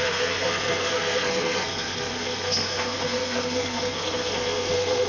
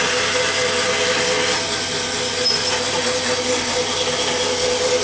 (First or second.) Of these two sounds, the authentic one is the second